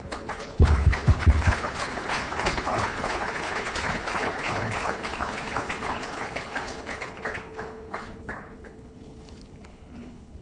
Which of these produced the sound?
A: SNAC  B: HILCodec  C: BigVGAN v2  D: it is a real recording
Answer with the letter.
B